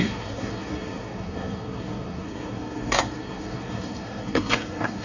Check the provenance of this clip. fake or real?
fake